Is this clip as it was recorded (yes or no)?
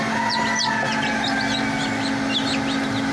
yes